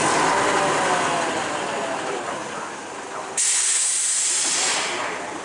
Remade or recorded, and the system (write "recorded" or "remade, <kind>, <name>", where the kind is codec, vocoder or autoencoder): recorded